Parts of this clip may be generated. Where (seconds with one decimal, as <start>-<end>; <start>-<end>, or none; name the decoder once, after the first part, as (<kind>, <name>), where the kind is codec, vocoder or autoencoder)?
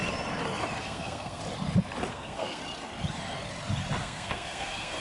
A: 0.8-1.4 (codec, SNAC); 2.1-2.6; 4.0-5.0